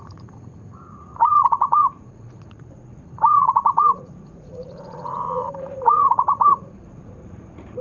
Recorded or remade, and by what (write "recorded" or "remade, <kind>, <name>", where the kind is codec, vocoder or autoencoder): remade, vocoder, Vocos